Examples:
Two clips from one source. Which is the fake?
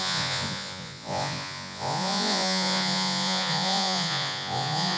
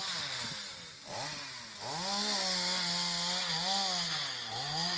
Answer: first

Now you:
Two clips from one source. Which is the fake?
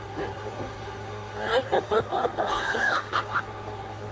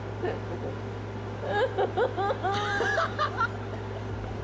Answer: first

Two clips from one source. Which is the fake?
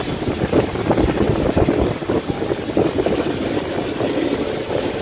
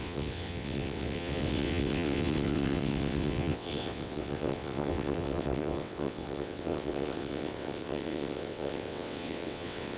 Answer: second